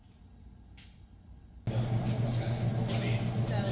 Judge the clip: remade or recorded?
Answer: recorded